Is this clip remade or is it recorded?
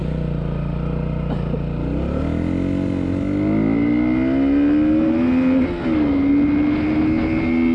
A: recorded